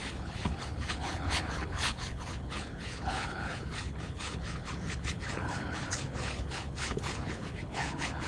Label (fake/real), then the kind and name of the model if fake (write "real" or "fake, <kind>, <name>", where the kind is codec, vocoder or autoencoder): fake, codec, HILCodec